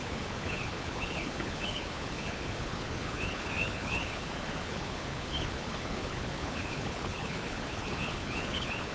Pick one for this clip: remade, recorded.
remade